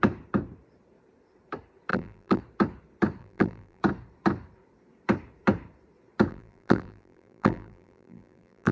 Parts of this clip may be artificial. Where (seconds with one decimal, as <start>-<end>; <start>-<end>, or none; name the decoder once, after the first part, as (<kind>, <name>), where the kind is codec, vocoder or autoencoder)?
1.9-2.4 (vocoder, BigVGAN v2); 3.2-3.8; 6.3-8.7